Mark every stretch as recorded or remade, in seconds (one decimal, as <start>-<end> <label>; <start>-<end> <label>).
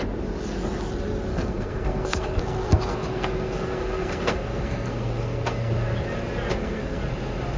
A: 0.0-1.3 recorded; 1.3-5.7 remade; 5.7-6.5 recorded; 6.5-7.0 remade; 7.0-7.6 recorded